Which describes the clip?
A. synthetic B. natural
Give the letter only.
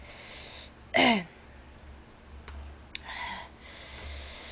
B